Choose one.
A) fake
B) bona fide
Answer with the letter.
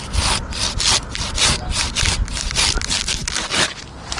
B